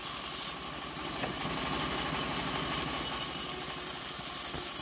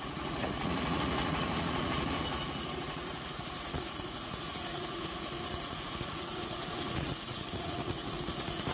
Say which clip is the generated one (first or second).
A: second